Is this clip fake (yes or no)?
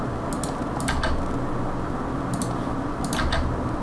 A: no